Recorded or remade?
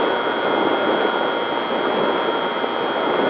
recorded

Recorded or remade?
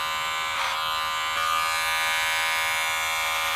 recorded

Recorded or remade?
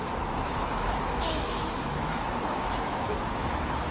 remade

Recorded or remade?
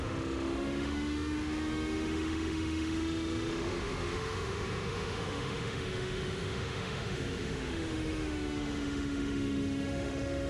remade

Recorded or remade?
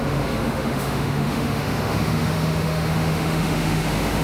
remade